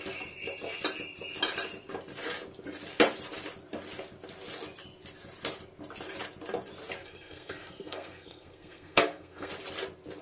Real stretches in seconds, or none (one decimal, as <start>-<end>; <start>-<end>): 0.0-7.0; 9.5-10.2